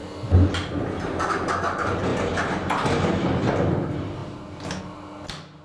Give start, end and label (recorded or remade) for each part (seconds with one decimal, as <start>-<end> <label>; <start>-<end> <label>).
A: 0.0-5.6 recorded